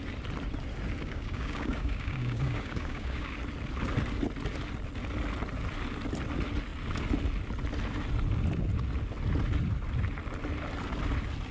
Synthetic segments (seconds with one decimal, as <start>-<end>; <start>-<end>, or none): 1.0-3.3

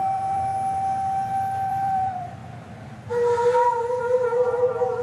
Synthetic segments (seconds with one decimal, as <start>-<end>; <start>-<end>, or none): 0.0-0.5; 1.7-2.4; 4.0-5.0